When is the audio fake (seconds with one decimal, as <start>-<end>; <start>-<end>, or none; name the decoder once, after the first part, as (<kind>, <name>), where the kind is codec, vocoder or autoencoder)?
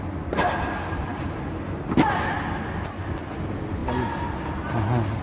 none